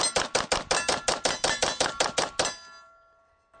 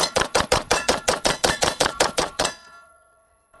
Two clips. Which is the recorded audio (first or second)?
first